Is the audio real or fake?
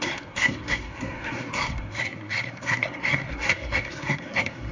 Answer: fake